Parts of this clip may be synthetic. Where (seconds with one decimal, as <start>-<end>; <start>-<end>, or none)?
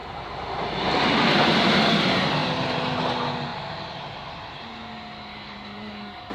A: 5.3-6.3